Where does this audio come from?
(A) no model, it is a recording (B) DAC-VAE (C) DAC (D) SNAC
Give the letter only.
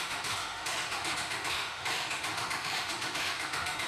B